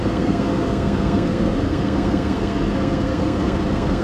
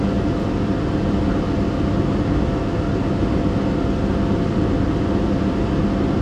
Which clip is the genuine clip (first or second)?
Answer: second